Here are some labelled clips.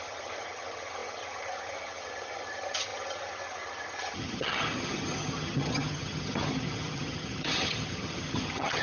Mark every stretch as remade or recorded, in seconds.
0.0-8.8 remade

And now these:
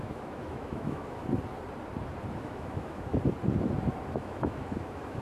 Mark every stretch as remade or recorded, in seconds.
0.0-1.2 remade; 1.2-2.4 recorded; 2.4-3.1 remade; 3.1-4.1 recorded; 4.1-5.2 remade